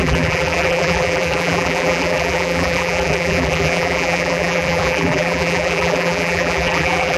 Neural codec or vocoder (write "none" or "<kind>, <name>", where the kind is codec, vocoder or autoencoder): vocoder, BigVGAN v2